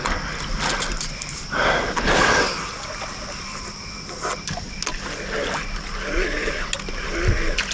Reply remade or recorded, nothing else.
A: recorded